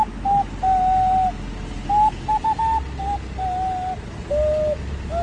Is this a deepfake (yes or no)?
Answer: no